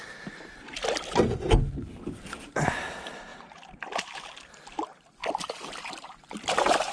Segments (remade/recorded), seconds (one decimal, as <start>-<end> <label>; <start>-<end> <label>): 0.0-6.9 recorded